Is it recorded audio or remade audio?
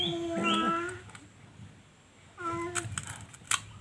recorded